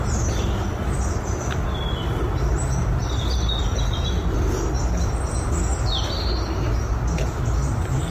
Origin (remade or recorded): recorded